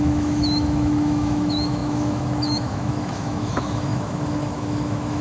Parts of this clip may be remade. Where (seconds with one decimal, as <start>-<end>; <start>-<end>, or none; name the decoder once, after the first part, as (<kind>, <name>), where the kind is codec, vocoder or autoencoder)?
0.0-5.2 (autoencoder, DAC-VAE)